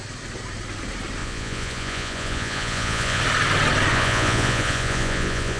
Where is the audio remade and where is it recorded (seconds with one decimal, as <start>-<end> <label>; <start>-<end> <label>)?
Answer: 0.0-1.2 recorded; 1.2-3.2 remade; 3.2-3.9 recorded; 3.9-5.6 remade